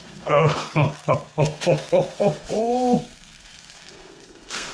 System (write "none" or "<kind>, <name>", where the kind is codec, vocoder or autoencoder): codec, SNAC